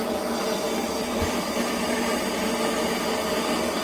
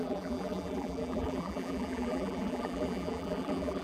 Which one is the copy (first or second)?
second